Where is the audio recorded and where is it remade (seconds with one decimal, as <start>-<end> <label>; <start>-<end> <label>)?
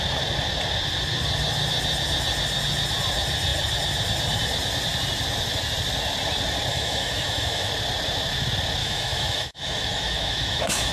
0.0-6.7 recorded; 6.7-7.7 remade; 7.7-8.8 recorded; 8.8-10.9 remade